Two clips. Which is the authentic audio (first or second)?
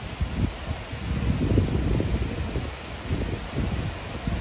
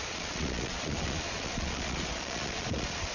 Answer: first